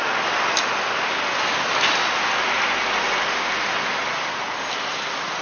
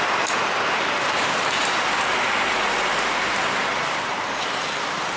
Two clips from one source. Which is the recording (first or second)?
first